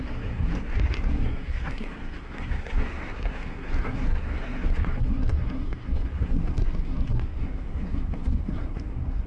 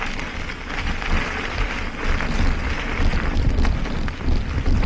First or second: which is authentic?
second